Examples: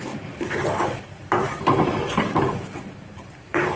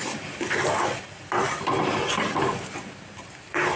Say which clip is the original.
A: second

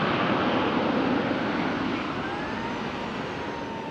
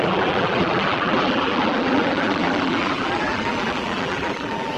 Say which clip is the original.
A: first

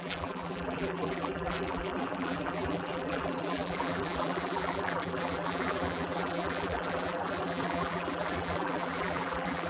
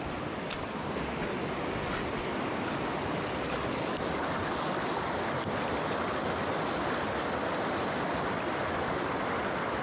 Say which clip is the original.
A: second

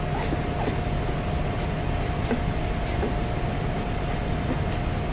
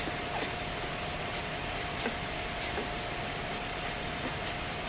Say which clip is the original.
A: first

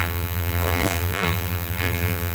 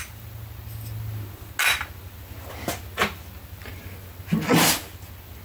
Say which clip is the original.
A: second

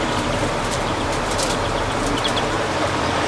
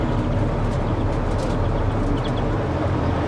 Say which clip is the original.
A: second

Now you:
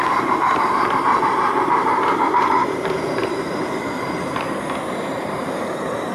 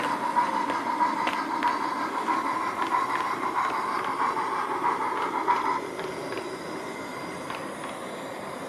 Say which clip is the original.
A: second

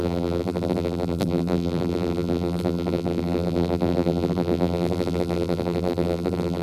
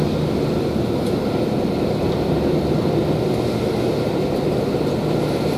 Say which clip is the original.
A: second